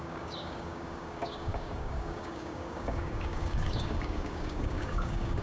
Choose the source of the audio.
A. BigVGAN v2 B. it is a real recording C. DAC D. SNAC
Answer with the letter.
C